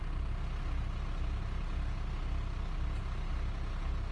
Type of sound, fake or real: real